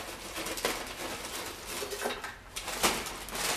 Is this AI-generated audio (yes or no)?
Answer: no